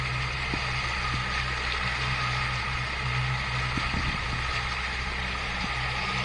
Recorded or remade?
recorded